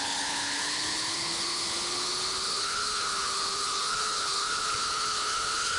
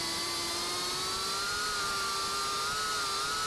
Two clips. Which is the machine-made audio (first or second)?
first